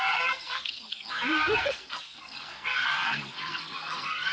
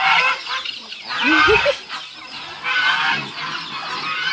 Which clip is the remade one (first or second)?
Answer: first